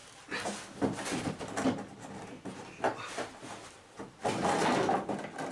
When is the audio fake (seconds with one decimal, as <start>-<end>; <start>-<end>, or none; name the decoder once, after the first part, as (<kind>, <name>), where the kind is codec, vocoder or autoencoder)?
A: none